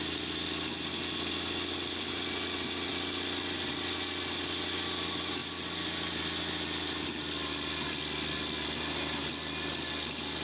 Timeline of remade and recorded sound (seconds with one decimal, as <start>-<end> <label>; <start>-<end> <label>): 0.0-10.4 recorded